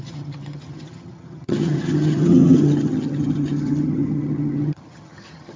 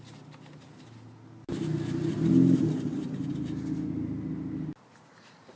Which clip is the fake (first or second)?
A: first